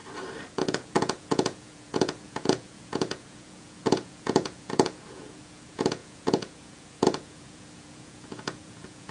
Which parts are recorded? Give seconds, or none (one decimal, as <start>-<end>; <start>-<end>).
0.0-0.5